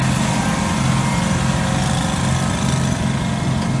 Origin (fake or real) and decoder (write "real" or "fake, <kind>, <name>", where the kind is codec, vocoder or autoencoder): real